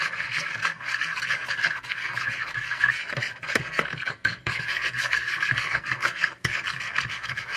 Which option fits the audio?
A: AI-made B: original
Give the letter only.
A